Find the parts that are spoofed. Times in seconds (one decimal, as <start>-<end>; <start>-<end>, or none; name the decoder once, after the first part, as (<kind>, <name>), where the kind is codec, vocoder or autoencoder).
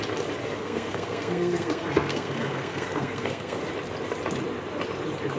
0.4-3.6 (codec, SNAC)